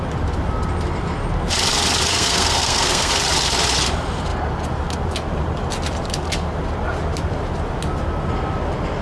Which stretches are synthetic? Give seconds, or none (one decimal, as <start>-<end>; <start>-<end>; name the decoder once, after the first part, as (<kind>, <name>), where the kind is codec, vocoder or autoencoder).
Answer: 2.1-3.1 (codec, SNAC)